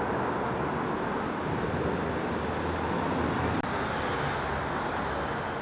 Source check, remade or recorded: recorded